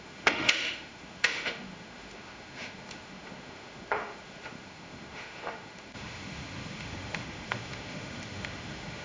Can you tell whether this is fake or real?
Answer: fake